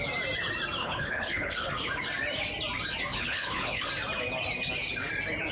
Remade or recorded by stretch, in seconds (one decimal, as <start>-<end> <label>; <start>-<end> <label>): 0.0-0.8 recorded; 0.8-1.7 remade; 1.7-3.1 recorded; 3.1-3.9 remade; 3.9-5.5 recorded